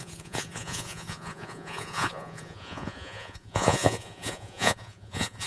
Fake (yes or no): yes